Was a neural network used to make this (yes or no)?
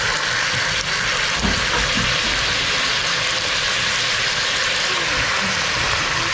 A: no